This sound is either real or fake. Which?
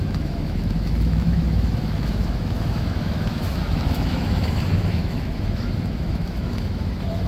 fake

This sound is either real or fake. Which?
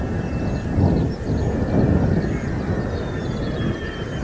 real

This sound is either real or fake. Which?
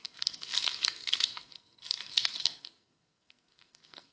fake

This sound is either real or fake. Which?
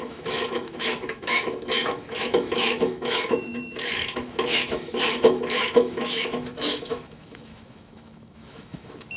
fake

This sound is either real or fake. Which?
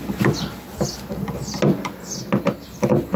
real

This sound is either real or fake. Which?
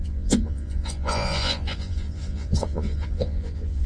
fake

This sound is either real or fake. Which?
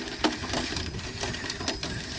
real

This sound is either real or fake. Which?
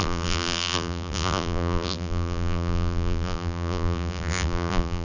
fake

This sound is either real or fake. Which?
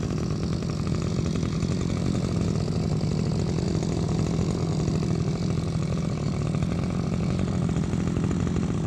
real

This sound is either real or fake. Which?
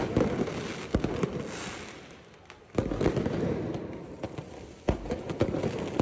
real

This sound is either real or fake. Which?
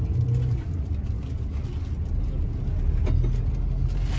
real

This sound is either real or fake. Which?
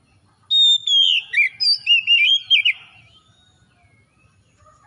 real